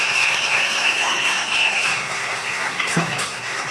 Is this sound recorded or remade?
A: remade